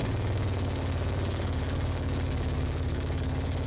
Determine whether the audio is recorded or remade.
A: remade